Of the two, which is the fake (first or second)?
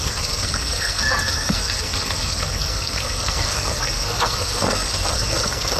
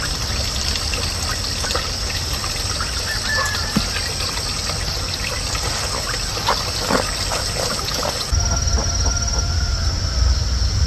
first